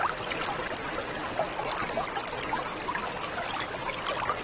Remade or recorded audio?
recorded